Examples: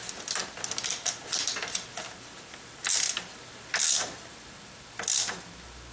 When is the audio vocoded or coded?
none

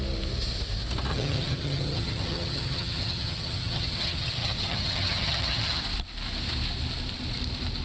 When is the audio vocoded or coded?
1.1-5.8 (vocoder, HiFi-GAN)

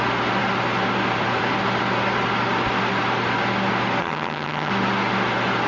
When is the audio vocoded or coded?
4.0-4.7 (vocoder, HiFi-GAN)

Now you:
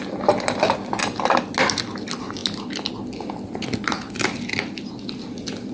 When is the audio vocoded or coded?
none